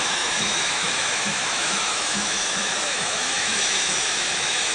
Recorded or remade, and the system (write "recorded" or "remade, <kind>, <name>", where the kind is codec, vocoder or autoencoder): remade, autoencoder, DAC-VAE